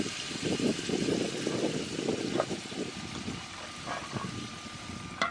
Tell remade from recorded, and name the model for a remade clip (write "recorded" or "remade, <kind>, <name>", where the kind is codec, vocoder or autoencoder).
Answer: recorded